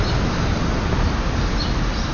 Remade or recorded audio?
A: recorded